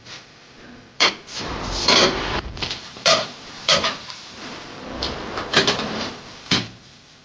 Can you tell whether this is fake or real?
fake